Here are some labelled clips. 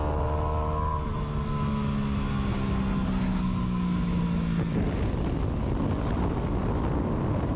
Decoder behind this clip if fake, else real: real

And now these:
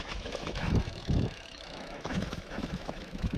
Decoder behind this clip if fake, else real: fake, autoencoder, DAC-VAE